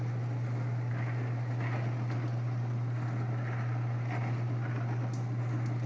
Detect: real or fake real